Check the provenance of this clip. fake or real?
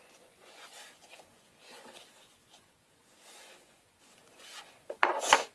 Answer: fake